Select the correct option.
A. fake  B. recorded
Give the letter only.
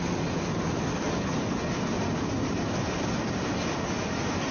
B